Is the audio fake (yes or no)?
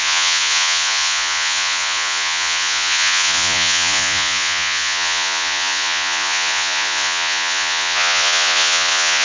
yes